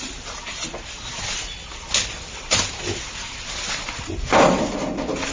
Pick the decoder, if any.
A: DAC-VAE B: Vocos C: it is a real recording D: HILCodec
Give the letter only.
C